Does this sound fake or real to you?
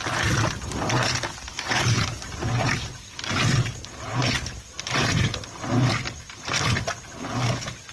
real